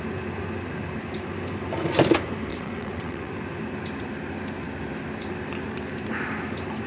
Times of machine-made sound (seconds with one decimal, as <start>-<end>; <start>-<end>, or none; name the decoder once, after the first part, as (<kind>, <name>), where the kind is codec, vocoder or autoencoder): 2.5-3.3 (vocoder, WaveNeXt)